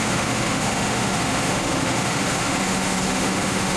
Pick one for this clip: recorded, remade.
remade